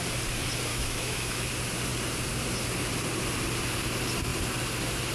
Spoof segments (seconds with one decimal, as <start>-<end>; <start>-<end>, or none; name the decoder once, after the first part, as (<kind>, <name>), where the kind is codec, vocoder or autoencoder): 0.7-1.5 (autoencoder, DAC-VAE)